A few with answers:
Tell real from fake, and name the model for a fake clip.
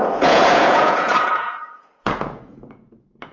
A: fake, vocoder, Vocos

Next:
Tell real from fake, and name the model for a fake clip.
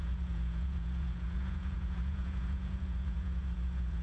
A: fake, vocoder, Vocos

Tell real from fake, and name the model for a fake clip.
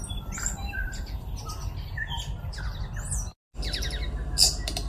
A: real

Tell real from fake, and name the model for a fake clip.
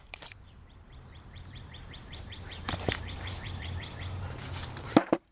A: fake, vocoder, BigVGAN v2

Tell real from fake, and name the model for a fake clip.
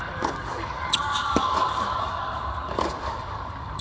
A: fake, codec, DAC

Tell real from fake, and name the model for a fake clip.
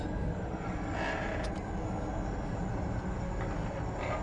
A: real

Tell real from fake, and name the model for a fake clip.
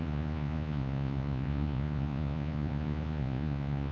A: fake, vocoder, Vocos